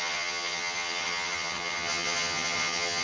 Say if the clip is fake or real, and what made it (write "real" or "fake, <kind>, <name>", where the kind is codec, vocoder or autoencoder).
fake, vocoder, HiFi-GAN